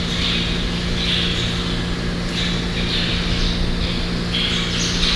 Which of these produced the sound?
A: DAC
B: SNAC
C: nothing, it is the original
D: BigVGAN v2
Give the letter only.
C